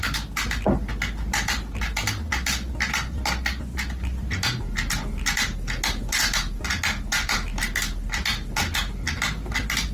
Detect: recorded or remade recorded